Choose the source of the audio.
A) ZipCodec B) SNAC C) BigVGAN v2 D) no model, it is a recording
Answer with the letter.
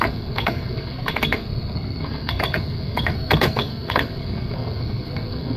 B